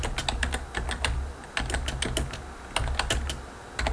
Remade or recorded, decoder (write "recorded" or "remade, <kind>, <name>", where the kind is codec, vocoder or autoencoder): recorded